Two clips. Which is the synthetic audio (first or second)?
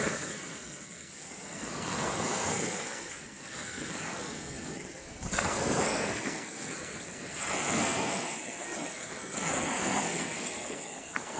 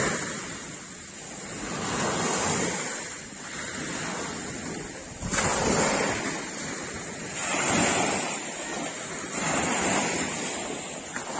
first